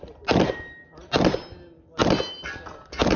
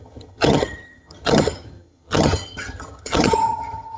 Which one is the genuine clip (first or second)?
first